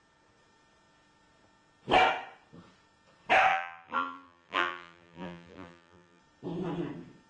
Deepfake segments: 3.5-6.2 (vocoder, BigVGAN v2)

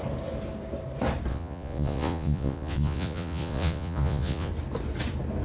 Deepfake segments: 1.3-4.5 (vocoder, Vocos)

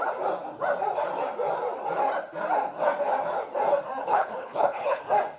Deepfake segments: 4.0-5.0 (codec, HILCodec)

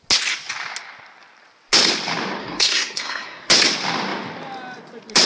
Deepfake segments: 2.4-3.5 (codec, SNAC)